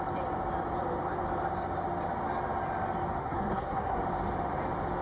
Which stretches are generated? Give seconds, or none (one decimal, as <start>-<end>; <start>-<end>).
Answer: 3.2-4.0